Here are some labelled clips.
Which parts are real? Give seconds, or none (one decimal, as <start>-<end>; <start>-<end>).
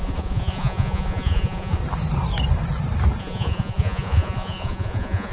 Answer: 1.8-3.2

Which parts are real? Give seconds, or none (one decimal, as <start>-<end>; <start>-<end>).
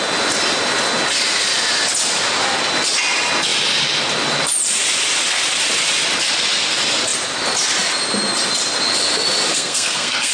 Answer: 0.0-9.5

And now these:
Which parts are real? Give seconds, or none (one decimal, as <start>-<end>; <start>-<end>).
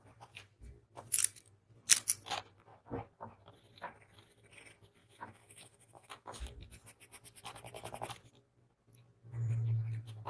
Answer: 0.0-5.0; 6.4-10.3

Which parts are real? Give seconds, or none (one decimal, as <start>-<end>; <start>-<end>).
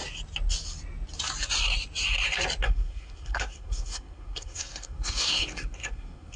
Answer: 0.0-2.6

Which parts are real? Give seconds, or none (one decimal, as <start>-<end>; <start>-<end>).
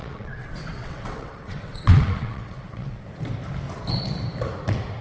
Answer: 3.0-5.0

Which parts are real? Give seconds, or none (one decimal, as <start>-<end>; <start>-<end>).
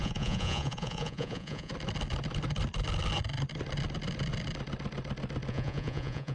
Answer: 1.7-5.5